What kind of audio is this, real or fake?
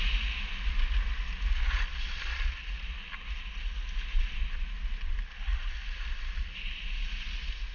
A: real